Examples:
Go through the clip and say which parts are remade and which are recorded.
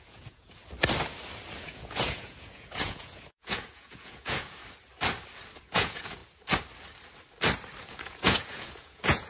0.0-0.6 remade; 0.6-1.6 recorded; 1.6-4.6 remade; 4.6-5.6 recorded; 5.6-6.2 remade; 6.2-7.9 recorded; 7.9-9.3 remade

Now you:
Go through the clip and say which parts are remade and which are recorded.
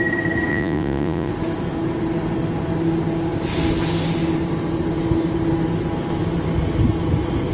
0.0-0.5 recorded; 0.5-1.3 remade; 1.3-7.5 recorded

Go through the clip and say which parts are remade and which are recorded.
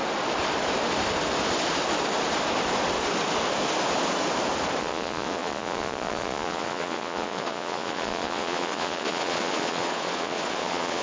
0.0-4.8 recorded; 4.8-11.0 remade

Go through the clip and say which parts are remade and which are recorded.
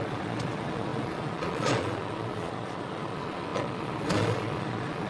0.0-5.1 remade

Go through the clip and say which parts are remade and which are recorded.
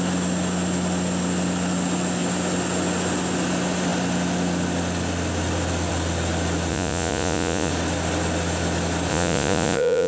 0.0-6.7 recorded; 6.7-7.7 remade; 7.7-9.1 recorded; 9.1-10.1 remade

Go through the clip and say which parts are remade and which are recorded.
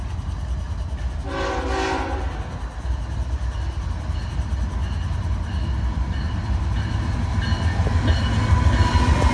0.0-9.3 recorded